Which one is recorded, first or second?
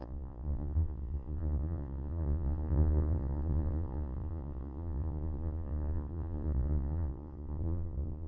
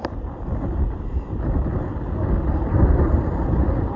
second